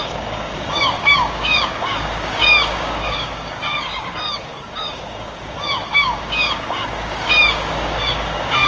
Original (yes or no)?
no